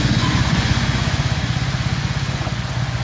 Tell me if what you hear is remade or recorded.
remade